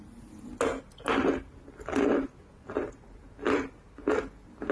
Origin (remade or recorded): recorded